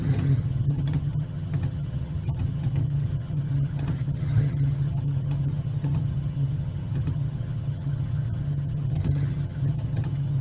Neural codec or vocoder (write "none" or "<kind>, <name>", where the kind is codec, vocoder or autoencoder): vocoder, HiFi-GAN